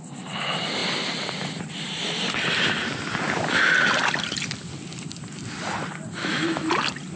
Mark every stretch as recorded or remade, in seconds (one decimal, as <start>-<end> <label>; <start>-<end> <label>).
0.0-6.2 recorded; 6.2-6.7 remade; 6.7-7.2 recorded